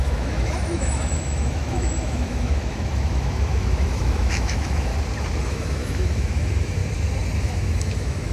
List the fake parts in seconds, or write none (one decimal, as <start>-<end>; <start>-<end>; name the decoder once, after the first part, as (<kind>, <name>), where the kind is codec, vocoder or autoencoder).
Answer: 0.0-4.9 (autoencoder, DAC-VAE); 5.4-6.8; 7.4-8.3